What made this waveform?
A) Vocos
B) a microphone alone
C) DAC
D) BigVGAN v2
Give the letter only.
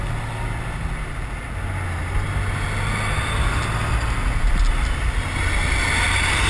B